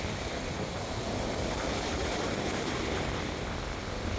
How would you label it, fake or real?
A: real